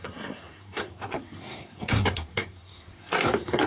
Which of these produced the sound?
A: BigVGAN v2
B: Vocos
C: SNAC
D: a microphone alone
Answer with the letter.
C